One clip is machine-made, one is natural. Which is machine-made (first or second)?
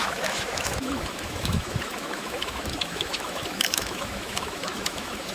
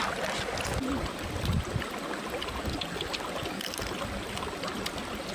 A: first